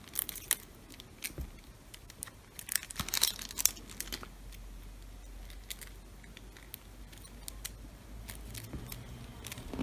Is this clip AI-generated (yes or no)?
no